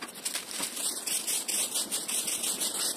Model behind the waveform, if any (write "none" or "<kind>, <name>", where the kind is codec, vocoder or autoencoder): none